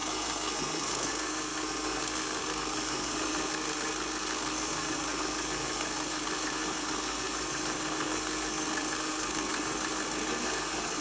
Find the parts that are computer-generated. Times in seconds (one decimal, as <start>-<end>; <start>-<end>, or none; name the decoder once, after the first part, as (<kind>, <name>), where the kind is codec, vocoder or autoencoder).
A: 0.0-11.0 (codec, SNAC)